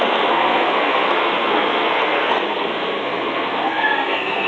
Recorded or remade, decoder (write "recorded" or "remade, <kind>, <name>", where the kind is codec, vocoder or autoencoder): remade, codec, SNAC